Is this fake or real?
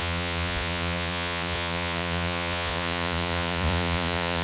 fake